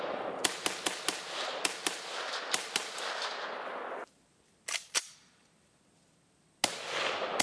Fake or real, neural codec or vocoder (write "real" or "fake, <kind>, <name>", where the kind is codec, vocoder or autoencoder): real